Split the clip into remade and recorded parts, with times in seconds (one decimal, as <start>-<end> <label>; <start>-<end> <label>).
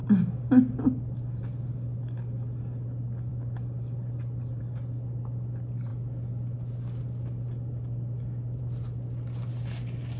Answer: 0.0-10.2 recorded